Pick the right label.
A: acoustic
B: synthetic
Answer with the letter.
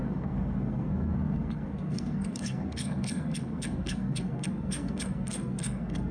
B